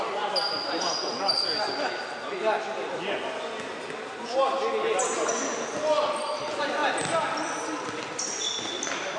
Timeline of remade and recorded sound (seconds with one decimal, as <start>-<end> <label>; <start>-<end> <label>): 0.0-9.2 recorded